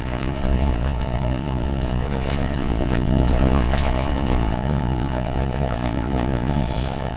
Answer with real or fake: fake